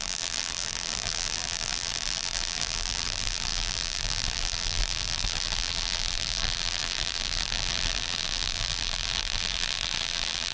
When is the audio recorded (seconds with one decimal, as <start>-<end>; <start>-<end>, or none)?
none